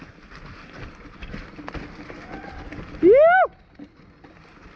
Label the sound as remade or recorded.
recorded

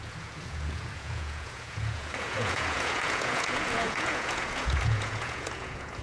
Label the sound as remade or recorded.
remade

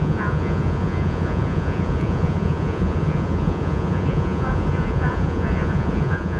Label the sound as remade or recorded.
remade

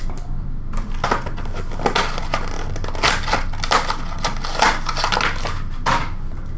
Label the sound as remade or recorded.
recorded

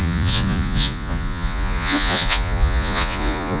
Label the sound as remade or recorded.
remade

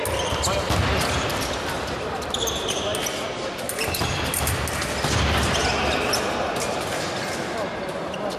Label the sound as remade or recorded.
recorded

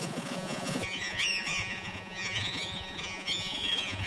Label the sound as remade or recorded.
remade